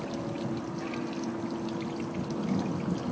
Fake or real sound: real